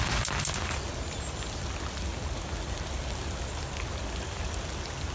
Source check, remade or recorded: recorded